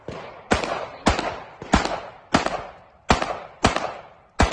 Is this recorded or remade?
recorded